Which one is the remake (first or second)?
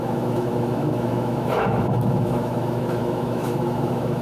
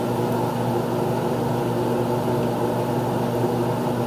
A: first